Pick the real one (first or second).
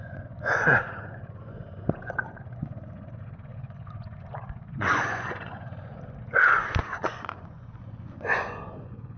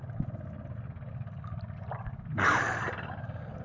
second